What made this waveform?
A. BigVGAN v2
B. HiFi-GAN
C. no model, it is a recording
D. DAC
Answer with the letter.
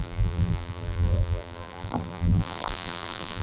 A